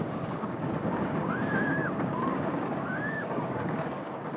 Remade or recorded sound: remade